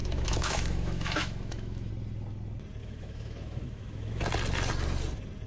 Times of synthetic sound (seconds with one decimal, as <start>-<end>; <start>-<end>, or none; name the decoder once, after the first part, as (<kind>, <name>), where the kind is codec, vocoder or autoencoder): 0.0-1.9 (autoencoder, DAC-VAE); 2.8-4.2